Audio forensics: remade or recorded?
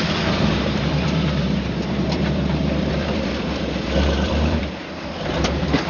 remade